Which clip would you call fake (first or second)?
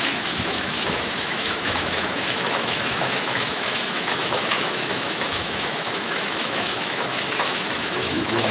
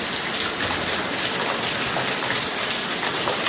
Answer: first